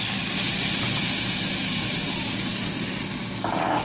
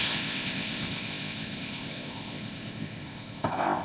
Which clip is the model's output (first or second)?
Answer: second